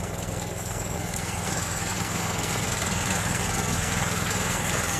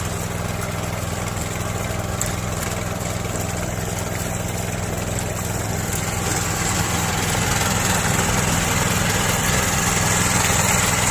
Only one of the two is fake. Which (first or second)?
first